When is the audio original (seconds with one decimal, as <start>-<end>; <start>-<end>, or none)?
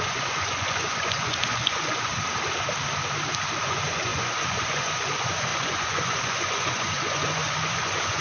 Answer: 2.1-3.6